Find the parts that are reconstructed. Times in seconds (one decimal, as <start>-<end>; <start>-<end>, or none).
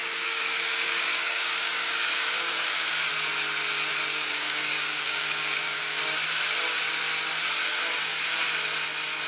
0.0-3.1; 4.1-6.0